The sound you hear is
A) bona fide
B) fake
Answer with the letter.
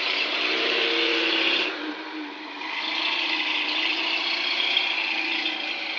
B